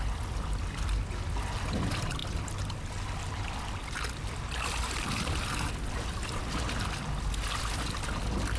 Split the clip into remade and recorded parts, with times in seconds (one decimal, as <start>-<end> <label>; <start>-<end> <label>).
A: 0.0-8.6 recorded